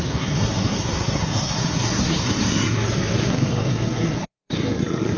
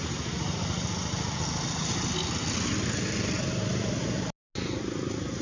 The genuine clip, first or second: second